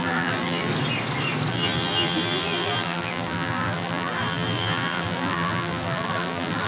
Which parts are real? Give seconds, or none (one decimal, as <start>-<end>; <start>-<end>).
0.7-1.5